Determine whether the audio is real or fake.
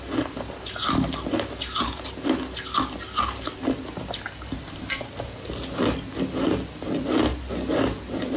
real